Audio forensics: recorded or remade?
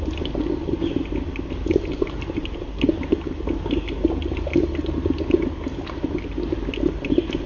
recorded